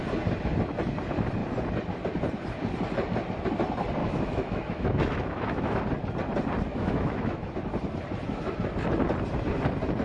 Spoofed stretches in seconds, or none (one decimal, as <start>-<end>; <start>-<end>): 4.0-5.8; 6.7-7.5